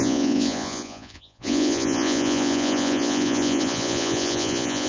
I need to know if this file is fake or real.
fake